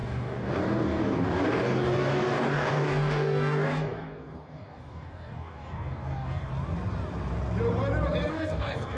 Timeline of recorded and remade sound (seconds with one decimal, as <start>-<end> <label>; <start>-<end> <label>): 0.0-6.5 remade; 6.5-8.3 recorded; 8.3-9.0 remade